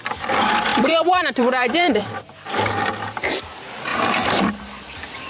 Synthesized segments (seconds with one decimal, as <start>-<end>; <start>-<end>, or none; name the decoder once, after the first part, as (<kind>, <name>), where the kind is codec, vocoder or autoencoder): 0.7-2.6 (vocoder, BigVGAN v2); 3.9-4.5

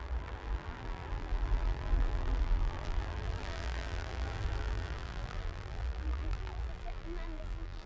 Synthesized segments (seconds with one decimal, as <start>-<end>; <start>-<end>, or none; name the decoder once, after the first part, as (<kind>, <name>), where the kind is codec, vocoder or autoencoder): 0.0-7.9 (vocoder, BigVGAN v2)

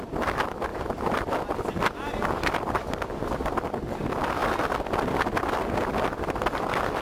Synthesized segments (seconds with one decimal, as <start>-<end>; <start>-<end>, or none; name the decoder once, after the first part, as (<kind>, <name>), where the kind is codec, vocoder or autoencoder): 0.7-1.3 (vocoder, BigVGAN v2)

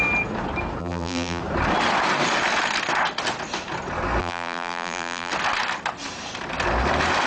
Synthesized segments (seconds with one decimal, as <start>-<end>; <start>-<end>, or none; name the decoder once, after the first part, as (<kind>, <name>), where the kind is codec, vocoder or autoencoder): 0.8-1.4 (vocoder, BigVGAN v2); 4.2-5.3